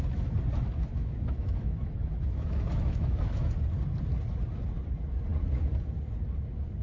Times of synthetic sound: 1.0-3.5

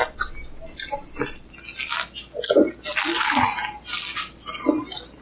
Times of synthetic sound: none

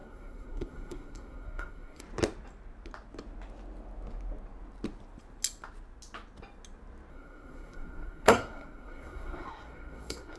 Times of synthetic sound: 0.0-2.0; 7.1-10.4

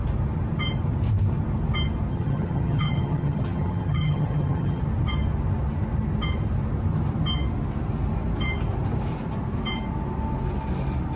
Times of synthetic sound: 2.1-4.8

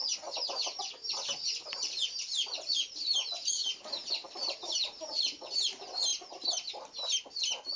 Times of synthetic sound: 4.2-5.5; 6.1-6.7